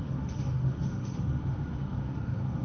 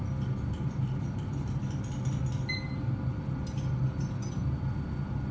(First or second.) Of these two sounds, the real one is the second